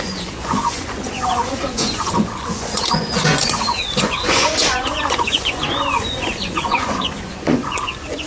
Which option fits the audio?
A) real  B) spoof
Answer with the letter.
B